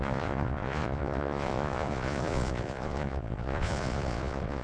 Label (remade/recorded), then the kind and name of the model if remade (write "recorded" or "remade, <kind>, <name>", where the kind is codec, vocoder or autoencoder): remade, vocoder, Vocos